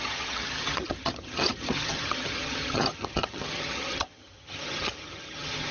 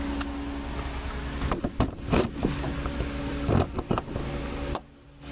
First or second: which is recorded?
second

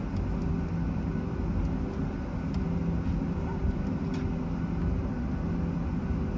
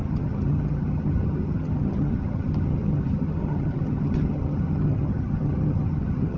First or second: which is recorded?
first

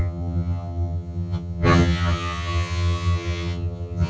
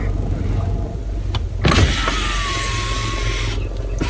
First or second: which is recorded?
second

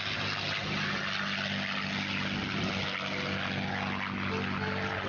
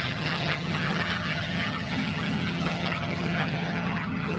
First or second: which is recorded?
first